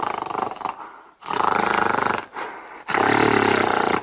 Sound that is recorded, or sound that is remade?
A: recorded